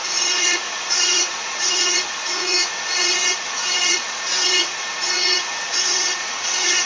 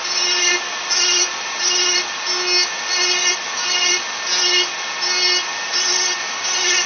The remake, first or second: first